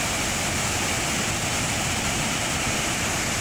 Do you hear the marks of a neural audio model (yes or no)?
no